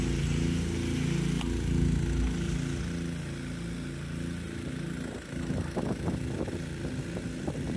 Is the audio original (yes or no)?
yes